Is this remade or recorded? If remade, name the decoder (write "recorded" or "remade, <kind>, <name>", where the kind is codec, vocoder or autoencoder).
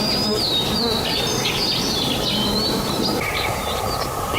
recorded